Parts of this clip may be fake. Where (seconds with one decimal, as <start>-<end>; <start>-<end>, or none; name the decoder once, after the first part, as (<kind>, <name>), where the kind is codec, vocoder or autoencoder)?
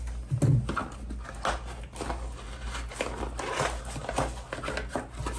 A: none